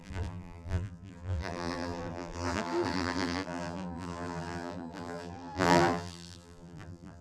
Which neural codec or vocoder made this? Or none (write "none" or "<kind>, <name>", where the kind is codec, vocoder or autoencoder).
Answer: vocoder, BigVGAN v2